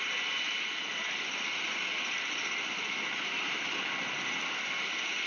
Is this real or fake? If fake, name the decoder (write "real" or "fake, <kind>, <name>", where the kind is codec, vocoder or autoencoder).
real